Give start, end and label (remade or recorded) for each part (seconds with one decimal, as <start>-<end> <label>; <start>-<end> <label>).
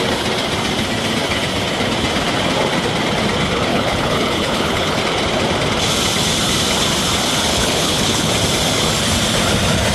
0.0-3.7 recorded; 3.7-5.0 remade; 5.0-7.5 recorded; 7.5-8.3 remade; 8.3-9.9 recorded